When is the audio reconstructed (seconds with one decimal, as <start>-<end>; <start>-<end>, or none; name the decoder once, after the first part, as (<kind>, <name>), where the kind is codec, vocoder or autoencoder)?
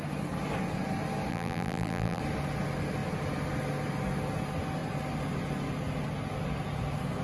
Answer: 1.3-2.2 (vocoder, BigVGAN v2)